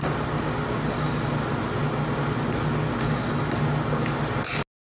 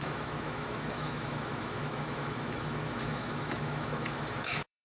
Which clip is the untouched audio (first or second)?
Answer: first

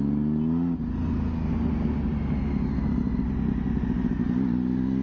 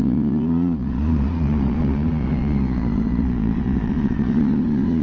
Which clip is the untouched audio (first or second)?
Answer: first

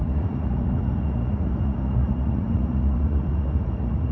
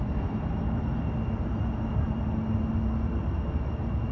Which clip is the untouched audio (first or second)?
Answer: second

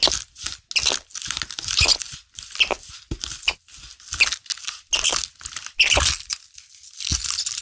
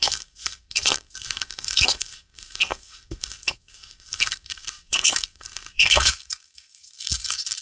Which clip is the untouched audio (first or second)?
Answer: first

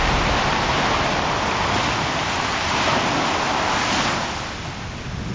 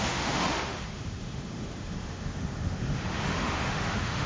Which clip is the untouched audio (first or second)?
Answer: first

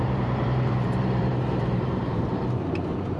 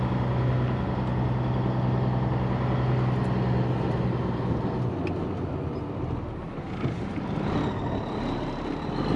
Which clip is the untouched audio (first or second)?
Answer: second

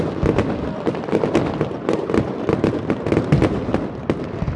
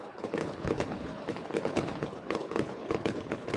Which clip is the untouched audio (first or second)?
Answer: first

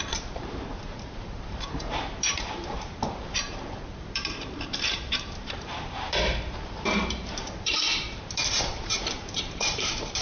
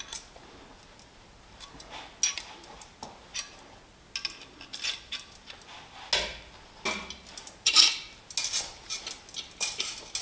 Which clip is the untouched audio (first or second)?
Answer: second